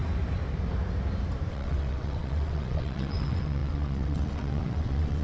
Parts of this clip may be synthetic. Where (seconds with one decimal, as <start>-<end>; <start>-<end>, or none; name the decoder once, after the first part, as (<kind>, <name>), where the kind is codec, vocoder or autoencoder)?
1.5-5.2 (vocoder, WaveNeXt)